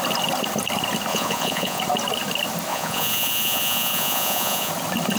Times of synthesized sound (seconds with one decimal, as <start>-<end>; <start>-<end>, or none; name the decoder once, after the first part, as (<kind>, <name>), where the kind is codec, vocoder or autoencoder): 1.1-1.8 (vocoder, Vocos); 2.7-4.7